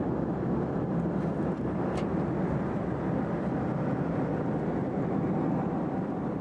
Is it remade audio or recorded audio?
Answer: recorded